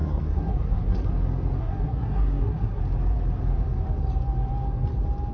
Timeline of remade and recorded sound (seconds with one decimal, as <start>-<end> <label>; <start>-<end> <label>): 0.0-1.1 remade; 1.1-1.6 recorded; 1.6-2.8 remade; 2.8-5.3 recorded